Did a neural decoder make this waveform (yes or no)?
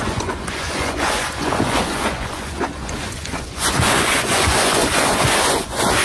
yes